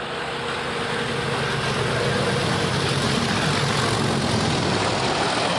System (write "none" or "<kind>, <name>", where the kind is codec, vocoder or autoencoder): none